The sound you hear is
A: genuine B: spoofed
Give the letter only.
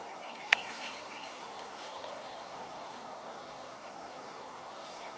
B